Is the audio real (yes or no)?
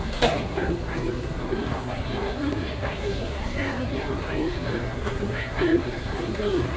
no